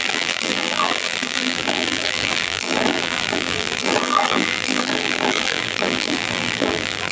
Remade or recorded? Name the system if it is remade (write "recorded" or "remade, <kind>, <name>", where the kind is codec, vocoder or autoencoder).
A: remade, vocoder, BigVGAN v2